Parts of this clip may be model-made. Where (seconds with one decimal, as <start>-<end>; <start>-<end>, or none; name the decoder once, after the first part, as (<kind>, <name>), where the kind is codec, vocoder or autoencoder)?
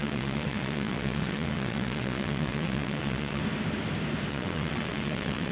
0.0-3.4 (vocoder, WaveNeXt); 4.3-5.5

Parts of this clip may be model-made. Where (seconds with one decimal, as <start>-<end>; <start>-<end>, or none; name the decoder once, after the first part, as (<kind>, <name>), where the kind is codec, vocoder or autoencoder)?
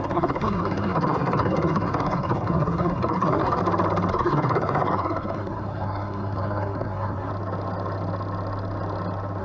0.0-3.6 (codec, SNAC); 4.1-7.3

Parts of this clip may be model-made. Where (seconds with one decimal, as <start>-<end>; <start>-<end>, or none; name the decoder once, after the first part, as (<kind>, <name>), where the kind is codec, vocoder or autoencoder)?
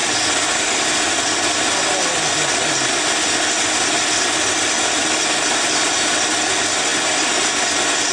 none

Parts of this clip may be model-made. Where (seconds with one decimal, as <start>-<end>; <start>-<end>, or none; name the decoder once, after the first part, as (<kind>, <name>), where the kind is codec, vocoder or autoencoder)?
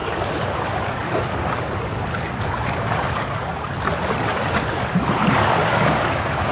0.0-3.9 (codec, DAC); 4.3-6.5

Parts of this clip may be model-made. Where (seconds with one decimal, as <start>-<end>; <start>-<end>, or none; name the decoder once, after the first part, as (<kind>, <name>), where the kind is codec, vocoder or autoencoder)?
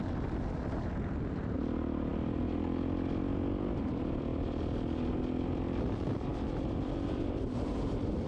6.3-8.3 (vocoder, BigVGAN v2)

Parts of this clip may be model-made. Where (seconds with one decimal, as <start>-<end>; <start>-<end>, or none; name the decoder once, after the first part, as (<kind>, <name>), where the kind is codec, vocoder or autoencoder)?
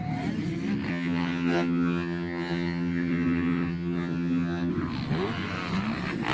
0.9-4.7 (vocoder, HiFi-GAN)